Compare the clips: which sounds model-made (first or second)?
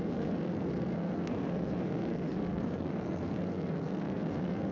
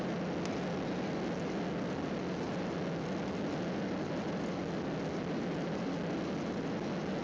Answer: first